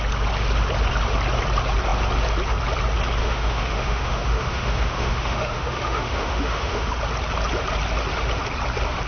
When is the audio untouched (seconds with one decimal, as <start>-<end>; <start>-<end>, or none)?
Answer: 0.0-3.2; 6.9-9.1